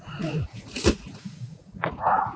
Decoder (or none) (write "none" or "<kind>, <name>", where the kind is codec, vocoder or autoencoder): vocoder, Vocos